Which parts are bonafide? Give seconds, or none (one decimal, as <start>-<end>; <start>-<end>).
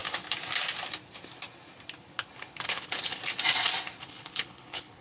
0.0-2.7; 3.2-4.0